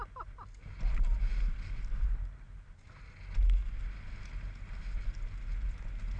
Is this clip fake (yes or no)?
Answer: no